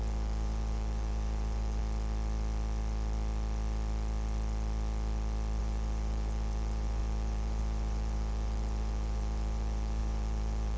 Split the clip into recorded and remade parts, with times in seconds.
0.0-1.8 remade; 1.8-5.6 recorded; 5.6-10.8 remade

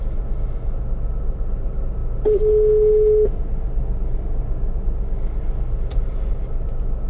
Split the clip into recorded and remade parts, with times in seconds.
0.0-7.1 recorded

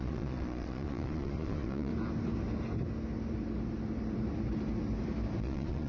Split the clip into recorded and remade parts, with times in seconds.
0.0-1.9 remade; 1.9-5.4 recorded; 5.4-5.9 remade

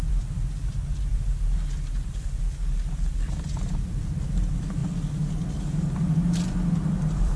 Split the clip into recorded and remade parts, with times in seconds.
0.0-4.8 remade; 4.8-5.5 recorded; 5.5-7.4 remade

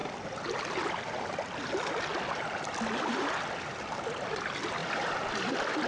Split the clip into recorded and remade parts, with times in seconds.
0.0-4.8 recorded; 4.8-5.9 remade

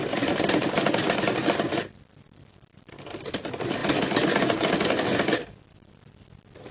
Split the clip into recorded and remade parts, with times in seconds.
0.0-6.7 recorded